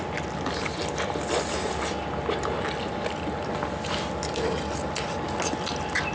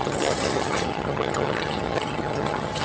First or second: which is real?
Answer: first